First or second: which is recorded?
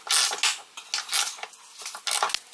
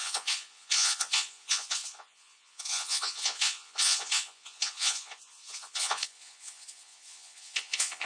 first